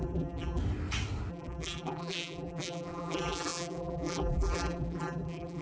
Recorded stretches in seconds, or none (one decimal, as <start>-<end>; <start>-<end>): 0.6-1.3